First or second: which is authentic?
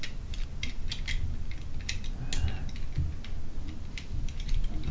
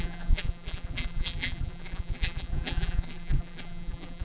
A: first